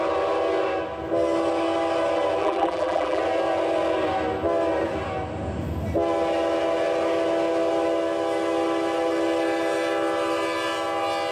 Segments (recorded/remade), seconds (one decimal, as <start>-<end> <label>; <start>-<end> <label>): 0.0-2.4 recorded; 2.4-3.2 remade; 3.2-11.3 recorded